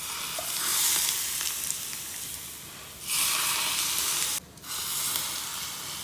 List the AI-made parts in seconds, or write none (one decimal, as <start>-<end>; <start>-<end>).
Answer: none